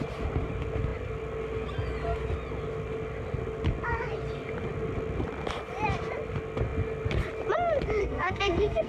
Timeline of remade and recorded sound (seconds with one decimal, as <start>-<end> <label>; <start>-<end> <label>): 0.0-8.0 recorded; 8.0-8.9 remade